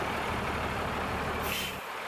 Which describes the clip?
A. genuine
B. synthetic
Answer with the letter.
A